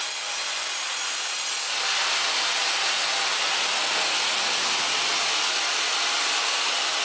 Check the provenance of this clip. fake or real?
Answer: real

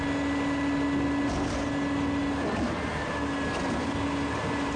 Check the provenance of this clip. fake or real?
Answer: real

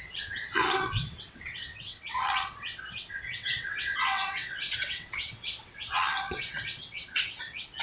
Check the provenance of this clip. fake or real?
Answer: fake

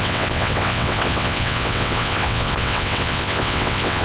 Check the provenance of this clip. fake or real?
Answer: fake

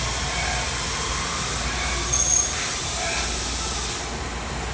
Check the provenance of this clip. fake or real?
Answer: real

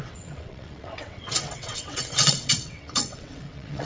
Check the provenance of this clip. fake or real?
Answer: fake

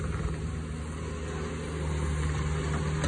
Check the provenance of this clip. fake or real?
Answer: real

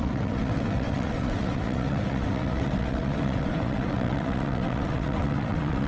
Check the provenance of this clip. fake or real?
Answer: fake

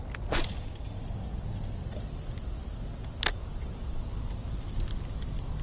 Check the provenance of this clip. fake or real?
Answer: real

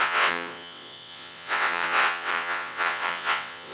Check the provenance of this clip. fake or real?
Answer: fake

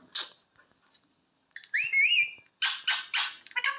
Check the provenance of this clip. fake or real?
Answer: real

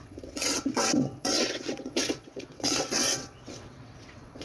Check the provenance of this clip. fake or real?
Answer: fake